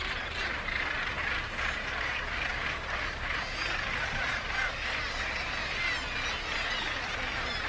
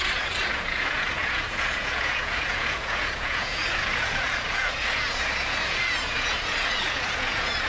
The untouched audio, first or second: first